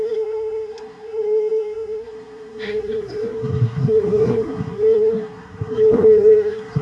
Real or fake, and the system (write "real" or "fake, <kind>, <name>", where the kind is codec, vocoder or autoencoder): fake, codec, SNAC